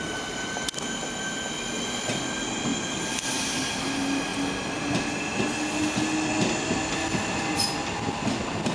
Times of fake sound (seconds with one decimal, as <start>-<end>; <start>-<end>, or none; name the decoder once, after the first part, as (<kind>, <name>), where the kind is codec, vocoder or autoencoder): none